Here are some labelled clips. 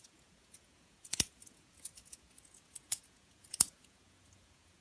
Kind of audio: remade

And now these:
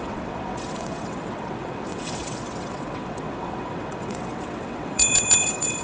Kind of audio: remade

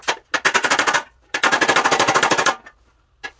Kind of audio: recorded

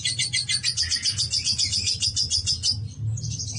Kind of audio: recorded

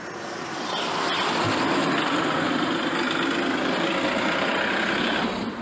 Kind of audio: recorded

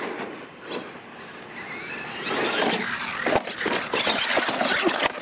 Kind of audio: recorded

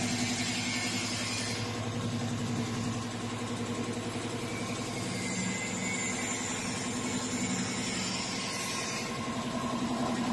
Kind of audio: recorded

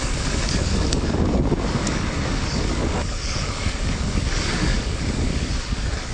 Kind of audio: remade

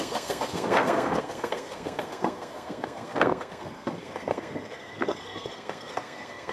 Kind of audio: remade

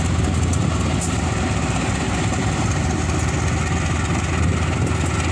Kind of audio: recorded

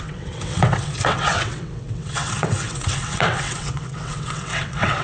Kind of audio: remade